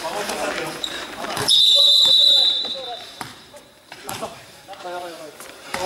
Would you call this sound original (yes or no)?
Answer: no